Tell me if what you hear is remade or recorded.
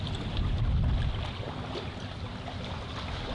recorded